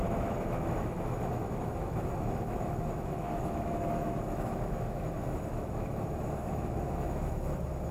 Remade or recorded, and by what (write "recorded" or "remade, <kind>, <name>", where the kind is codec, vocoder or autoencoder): remade, autoencoder, DAC-VAE